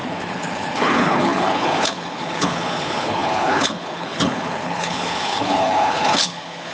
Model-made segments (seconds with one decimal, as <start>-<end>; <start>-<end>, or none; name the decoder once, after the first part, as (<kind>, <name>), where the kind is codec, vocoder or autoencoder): 0.0-6.7 (codec, HILCodec)